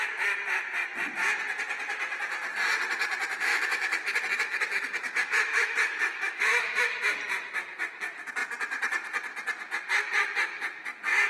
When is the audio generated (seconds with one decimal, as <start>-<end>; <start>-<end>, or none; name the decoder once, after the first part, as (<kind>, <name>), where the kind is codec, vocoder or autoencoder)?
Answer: 3.3-6.8 (autoencoder, DAC-VAE)

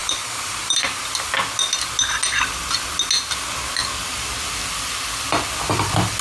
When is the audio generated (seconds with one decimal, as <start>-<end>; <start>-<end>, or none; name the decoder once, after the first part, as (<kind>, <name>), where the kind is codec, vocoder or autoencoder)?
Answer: 0.0-1.0 (vocoder, BigVGAN v2)

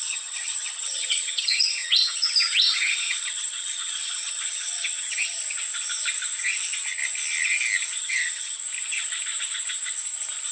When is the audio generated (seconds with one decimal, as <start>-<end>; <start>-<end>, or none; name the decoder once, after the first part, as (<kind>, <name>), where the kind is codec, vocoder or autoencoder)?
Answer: 0.0-5.4 (vocoder, HiFi-GAN); 8.0-8.6

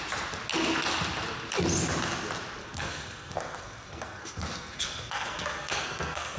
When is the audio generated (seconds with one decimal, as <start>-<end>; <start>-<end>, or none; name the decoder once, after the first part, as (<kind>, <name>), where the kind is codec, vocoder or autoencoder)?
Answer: 2.6-6.4 (codec, SNAC)

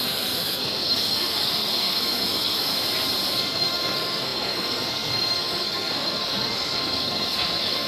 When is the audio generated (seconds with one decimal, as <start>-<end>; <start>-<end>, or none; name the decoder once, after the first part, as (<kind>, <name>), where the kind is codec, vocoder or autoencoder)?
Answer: 0.0-2.7 (codec, SNAC); 3.3-7.9